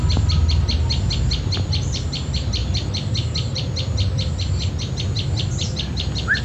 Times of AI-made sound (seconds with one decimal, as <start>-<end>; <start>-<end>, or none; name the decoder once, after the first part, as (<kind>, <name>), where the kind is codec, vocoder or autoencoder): none